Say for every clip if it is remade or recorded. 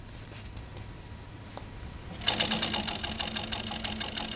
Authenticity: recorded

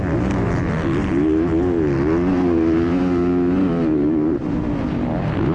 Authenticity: recorded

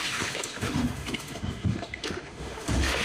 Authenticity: remade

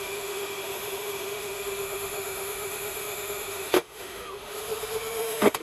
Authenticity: remade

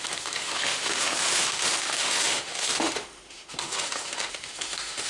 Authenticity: remade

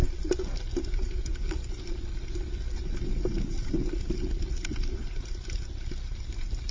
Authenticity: recorded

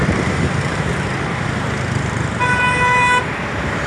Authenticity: remade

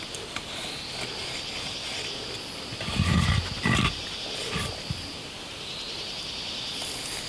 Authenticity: recorded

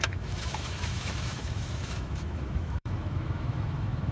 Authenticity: remade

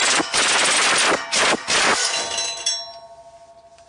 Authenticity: recorded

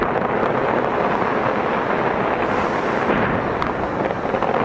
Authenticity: recorded